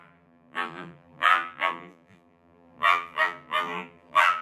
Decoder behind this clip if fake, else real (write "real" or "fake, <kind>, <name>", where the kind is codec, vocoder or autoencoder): fake, vocoder, BigVGAN v2